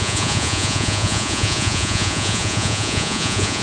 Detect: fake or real fake